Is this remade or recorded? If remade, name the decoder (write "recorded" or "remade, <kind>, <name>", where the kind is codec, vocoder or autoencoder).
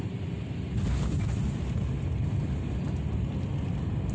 recorded